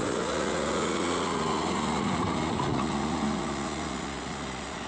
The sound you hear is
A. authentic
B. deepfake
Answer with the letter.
B